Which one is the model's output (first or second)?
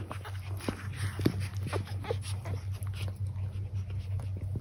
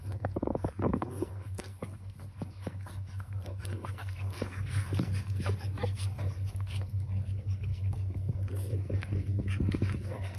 second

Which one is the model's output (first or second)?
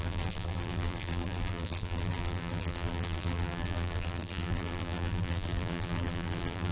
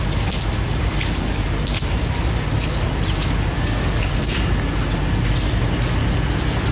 first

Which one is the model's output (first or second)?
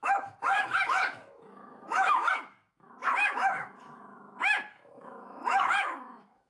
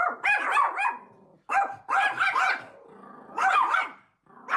first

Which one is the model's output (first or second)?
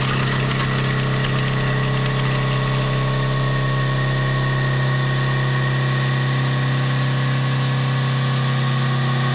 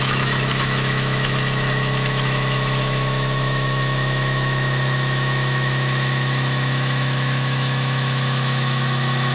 second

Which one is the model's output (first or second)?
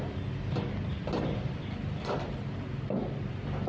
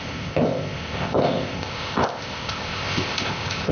second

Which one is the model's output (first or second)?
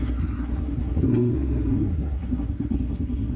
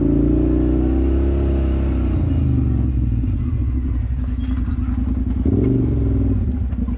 first